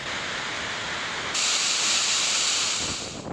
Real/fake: real